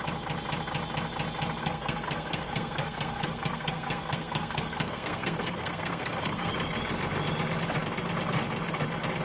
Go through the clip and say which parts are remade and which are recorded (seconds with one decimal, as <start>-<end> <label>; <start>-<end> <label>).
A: 0.0-1.6 recorded; 1.6-6.5 remade; 6.5-9.2 recorded